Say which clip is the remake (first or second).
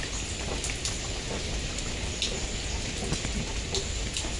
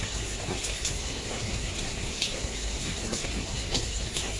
second